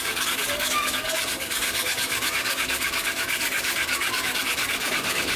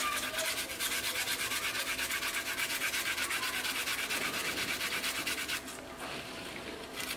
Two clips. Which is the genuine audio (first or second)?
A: second